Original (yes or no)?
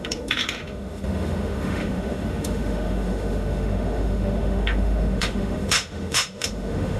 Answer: no